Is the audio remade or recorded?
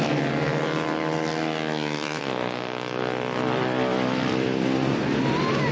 remade